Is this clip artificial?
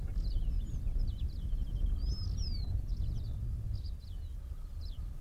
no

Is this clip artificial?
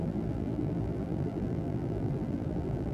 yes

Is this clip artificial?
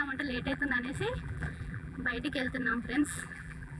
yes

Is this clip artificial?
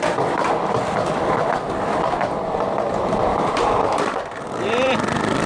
yes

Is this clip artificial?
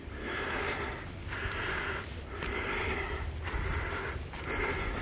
no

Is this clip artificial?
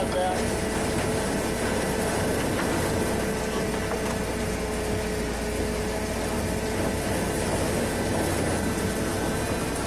no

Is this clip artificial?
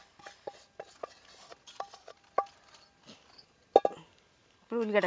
no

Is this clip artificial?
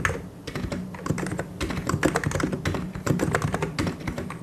no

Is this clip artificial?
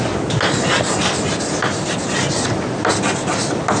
no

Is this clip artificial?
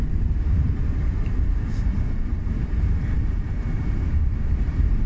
yes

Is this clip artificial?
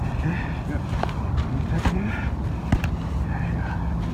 no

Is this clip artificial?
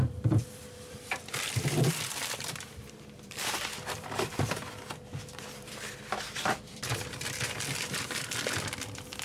yes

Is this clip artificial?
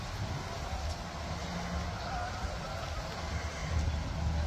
no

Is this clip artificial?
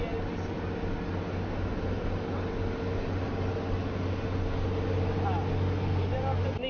no